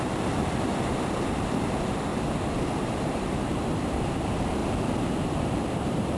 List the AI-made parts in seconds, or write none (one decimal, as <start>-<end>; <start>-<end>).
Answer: 0.0-2.1; 2.7-4.6; 5.4-6.2